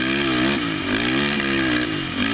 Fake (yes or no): no